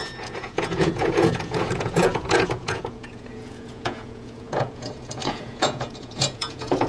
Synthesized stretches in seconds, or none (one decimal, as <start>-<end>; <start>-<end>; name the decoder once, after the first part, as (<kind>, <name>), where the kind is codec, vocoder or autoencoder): 0.0-6.9 (vocoder, Vocos)